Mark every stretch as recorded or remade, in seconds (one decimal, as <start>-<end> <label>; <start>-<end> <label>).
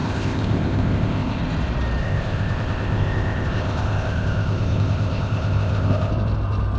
0.0-1.4 remade; 1.4-2.0 recorded; 2.0-6.1 remade; 6.1-6.8 recorded